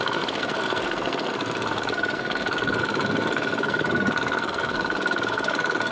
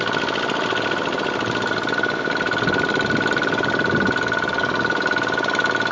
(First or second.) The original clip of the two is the second